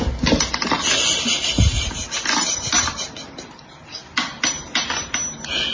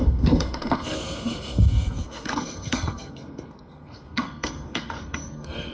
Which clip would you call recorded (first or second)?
first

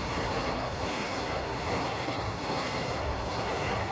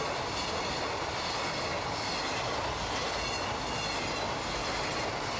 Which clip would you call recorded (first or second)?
second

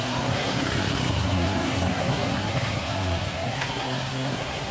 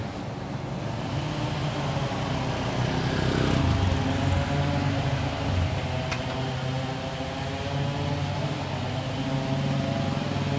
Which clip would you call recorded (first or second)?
second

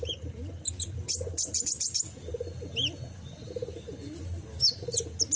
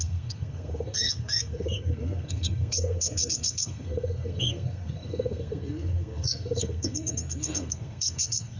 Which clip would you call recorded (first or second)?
first